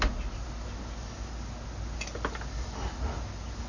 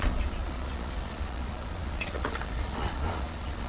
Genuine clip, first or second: first